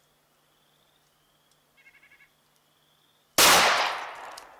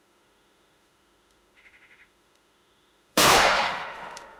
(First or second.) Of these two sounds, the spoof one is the second